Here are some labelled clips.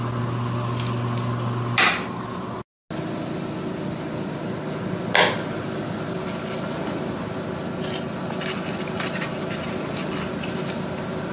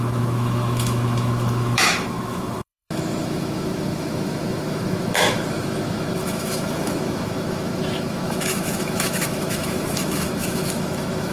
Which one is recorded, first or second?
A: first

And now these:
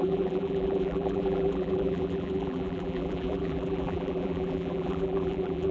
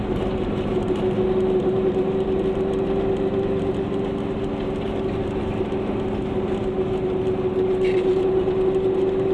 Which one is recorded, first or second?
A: second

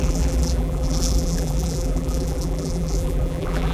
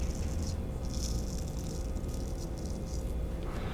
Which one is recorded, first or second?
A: second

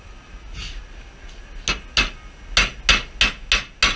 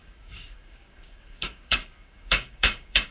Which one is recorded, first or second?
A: first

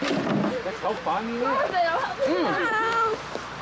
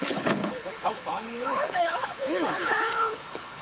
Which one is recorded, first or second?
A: first